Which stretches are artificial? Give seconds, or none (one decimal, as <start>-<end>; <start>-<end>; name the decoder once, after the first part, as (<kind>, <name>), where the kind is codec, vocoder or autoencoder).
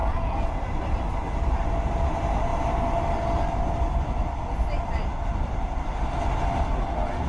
0.0-0.6 (vocoder, Vocos)